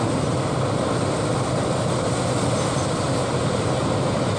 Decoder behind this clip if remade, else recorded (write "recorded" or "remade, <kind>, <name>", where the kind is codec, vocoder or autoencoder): recorded